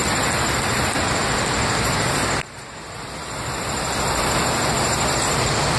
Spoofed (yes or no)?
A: no